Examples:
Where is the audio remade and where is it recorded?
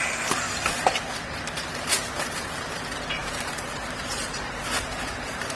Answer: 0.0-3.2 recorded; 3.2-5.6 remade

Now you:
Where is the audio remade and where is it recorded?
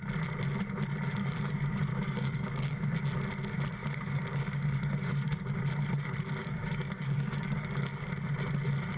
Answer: 0.0-1.2 recorded; 1.2-2.8 remade; 2.8-3.8 recorded; 3.8-5.6 remade; 5.6-6.4 recorded; 6.4-8.1 remade; 8.1-9.0 recorded